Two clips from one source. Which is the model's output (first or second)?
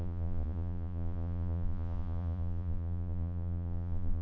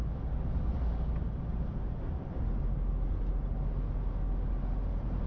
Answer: first